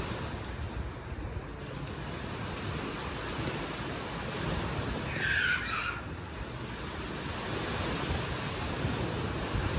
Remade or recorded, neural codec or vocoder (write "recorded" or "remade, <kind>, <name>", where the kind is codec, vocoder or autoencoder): recorded